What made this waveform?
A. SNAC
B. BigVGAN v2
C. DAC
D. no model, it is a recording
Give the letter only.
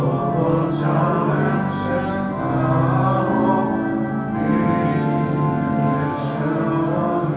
D